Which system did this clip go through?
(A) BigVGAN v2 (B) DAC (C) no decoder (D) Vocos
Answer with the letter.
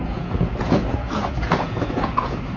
D